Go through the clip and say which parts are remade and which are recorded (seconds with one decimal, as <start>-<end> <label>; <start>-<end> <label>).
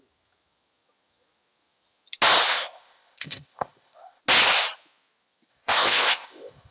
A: 0.0-2.5 recorded; 2.5-4.2 remade; 4.2-5.5 recorded; 5.5-6.7 remade